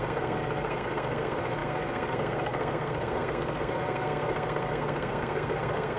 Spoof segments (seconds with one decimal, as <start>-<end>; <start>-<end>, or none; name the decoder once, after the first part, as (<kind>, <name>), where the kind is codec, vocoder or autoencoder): 0.0-6.0 (codec, SNAC)